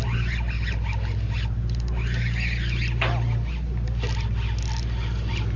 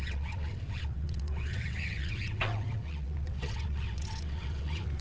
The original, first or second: first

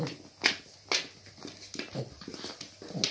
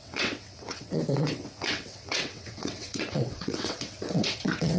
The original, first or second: first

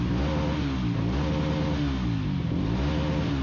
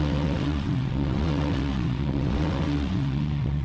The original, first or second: first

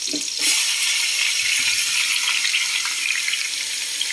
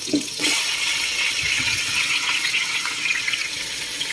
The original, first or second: first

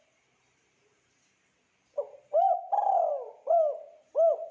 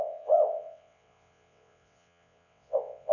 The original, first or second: first